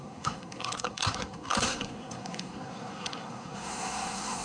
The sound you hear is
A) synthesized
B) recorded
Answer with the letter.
A